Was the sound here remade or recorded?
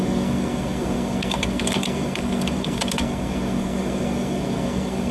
remade